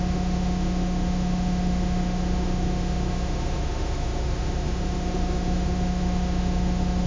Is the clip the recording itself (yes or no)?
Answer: no